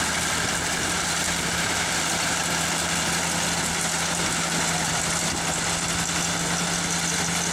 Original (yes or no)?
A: yes